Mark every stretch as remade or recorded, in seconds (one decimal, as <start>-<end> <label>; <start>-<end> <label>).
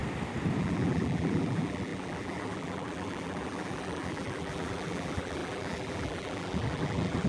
0.0-0.6 recorded; 0.6-7.3 remade